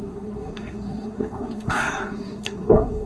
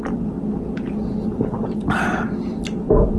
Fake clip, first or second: first